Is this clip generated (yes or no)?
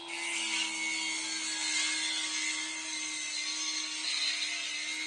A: no